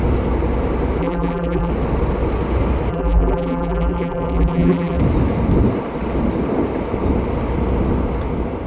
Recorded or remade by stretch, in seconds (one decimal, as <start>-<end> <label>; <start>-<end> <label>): 0.0-1.0 recorded; 1.0-1.7 remade; 1.7-2.9 recorded; 2.9-5.0 remade; 5.0-8.7 recorded